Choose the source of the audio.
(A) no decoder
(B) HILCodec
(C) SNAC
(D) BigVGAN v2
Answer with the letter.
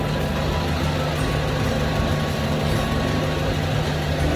A